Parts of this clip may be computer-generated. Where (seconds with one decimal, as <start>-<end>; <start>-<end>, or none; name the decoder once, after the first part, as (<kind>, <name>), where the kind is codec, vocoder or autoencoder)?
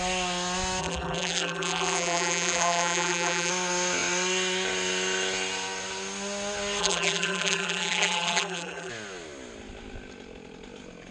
0.8-3.5 (vocoder, BigVGAN v2); 6.8-8.9